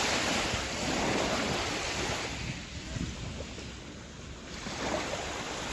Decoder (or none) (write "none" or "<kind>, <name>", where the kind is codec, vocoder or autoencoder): none